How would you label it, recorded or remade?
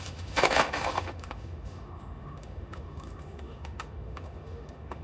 remade